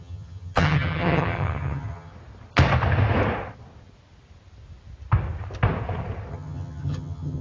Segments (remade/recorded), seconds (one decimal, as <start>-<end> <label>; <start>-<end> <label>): 0.0-2.1 remade; 2.1-6.3 recorded; 6.3-7.4 remade